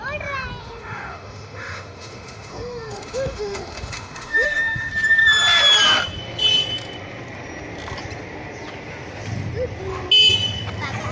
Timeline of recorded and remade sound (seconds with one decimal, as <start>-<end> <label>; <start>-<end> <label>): 0.0-0.6 recorded; 0.6-4.9 remade; 4.9-11.1 recorded

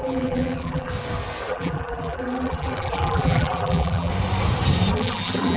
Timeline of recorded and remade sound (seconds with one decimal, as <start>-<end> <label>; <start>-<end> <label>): 0.0-0.9 remade; 0.9-1.5 recorded; 1.5-4.1 remade; 4.1-4.9 recorded; 4.9-5.6 remade